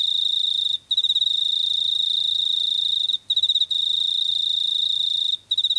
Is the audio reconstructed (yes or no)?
no